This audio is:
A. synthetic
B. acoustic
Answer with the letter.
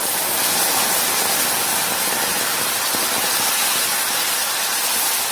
B